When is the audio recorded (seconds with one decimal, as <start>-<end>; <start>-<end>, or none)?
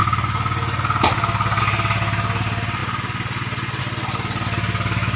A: 0.0-5.2